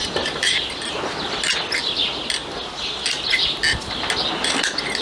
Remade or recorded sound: recorded